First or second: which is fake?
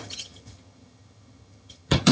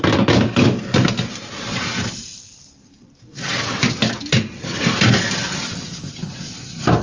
first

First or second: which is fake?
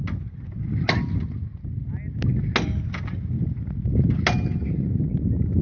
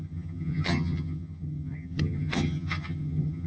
second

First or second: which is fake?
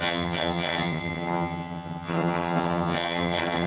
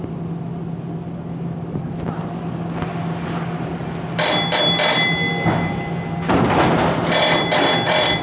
first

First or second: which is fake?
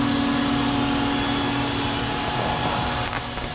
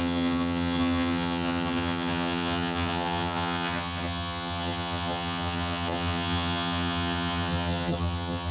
second